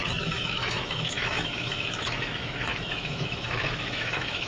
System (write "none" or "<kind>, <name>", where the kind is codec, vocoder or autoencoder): autoencoder, DAC-VAE